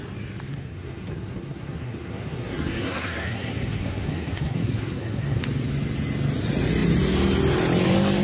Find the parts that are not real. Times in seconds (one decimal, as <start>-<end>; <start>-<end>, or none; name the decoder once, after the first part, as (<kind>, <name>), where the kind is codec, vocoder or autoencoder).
0.5-5.4 (codec, SNAC)